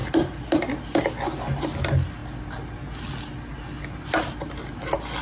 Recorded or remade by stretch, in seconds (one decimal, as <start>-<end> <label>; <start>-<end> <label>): 0.0-5.2 recorded